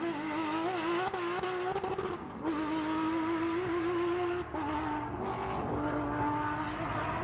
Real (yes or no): yes